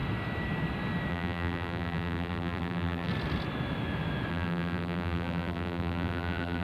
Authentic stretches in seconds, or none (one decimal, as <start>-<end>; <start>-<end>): 0.0-1.1; 3.1-4.3